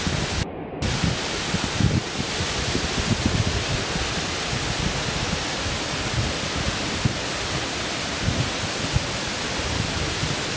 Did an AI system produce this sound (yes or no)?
no